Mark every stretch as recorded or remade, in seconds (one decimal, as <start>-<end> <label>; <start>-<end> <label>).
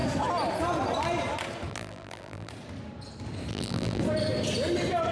0.0-1.7 recorded; 1.7-2.5 remade; 2.5-3.5 recorded; 3.5-4.0 remade; 4.0-5.1 recorded